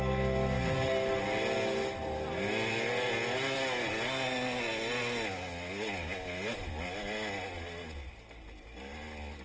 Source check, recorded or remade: recorded